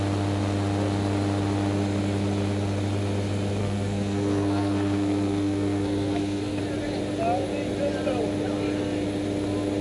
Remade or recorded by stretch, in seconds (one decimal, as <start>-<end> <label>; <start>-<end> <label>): 0.0-3.6 recorded; 3.6-6.6 remade; 6.6-9.8 recorded